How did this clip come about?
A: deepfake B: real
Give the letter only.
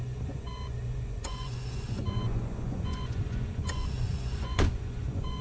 A